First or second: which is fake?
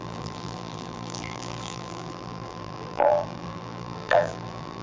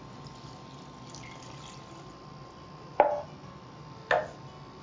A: first